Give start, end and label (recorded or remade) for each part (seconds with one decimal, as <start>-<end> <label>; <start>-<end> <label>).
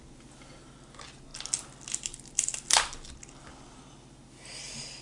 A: 0.0-5.0 recorded